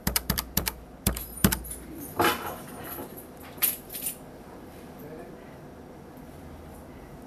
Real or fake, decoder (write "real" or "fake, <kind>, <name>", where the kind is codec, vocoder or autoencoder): fake, vocoder, BigVGAN v2